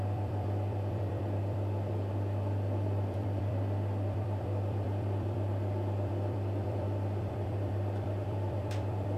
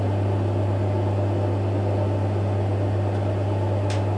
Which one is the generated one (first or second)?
first